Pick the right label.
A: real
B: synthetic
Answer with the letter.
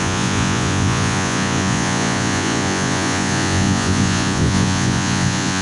B